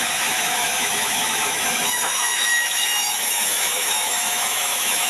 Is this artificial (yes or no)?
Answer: yes